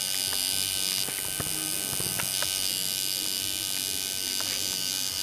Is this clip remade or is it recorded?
recorded